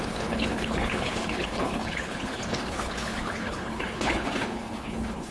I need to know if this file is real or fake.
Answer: fake